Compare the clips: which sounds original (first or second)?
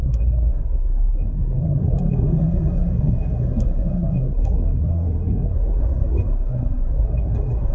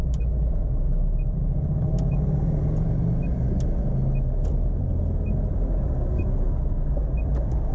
second